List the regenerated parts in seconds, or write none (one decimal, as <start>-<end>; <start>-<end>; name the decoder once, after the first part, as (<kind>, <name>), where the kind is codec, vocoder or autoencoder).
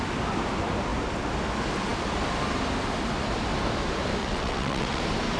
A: 4.2-5.0 (vocoder, WaveNeXt)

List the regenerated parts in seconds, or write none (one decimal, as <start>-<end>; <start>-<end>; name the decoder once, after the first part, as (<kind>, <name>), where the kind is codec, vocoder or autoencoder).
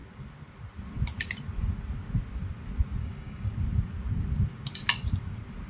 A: 3.0-3.5 (codec, DAC)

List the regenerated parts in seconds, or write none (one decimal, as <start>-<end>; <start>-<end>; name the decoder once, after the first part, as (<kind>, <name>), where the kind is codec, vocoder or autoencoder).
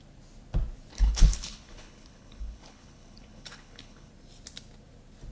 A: 0.9-4.1 (codec, HILCodec)